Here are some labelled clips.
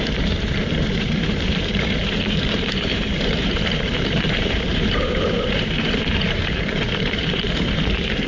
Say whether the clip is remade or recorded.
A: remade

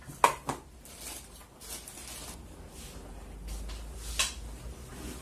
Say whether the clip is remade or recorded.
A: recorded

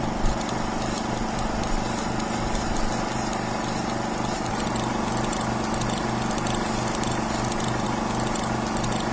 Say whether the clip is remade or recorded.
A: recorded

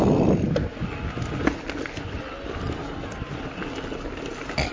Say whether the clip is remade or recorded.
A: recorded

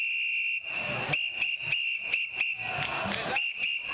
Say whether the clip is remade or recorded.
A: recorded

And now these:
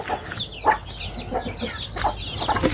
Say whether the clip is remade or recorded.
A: recorded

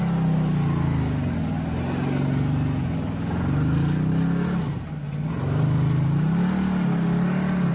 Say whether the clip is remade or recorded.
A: recorded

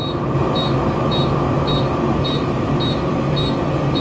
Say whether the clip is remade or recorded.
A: remade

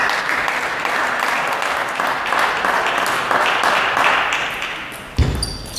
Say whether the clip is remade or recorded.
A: recorded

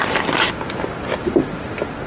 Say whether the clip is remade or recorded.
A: recorded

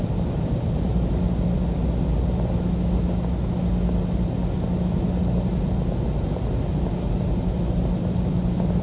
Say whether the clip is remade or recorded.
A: recorded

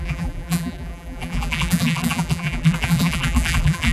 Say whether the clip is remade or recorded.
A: remade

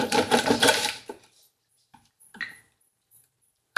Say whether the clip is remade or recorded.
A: remade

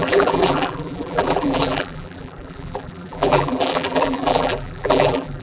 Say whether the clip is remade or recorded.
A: remade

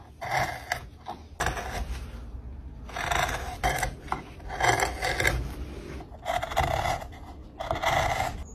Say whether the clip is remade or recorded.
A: recorded